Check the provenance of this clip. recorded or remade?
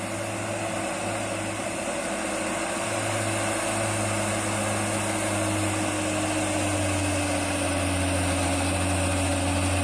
recorded